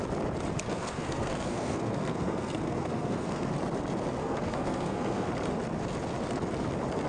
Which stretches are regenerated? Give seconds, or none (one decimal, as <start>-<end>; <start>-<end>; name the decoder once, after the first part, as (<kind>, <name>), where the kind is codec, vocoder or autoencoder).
0.7-3.5 (codec, SNAC); 4.2-5.3